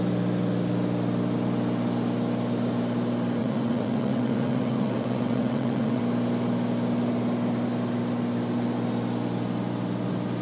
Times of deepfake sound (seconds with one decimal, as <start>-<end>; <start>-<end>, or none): 3.4-6.0